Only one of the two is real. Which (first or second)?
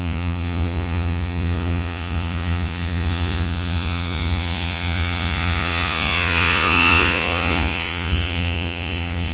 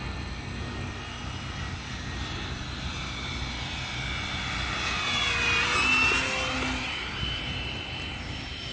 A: second